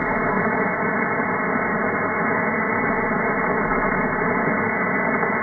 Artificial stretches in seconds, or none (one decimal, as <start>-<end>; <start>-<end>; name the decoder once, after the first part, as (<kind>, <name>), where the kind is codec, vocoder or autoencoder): none